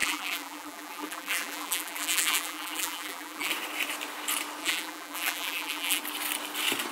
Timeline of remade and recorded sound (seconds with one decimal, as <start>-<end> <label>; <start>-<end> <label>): 0.0-3.5 remade; 3.5-4.6 recorded; 4.6-6.0 remade; 6.0-6.9 recorded